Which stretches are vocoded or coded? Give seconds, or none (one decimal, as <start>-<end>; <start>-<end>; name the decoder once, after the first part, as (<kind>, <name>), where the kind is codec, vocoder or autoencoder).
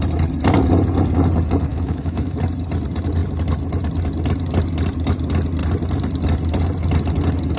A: 1.7-2.4 (autoencoder, DAC-VAE)